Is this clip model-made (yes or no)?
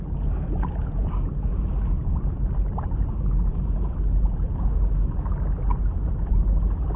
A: no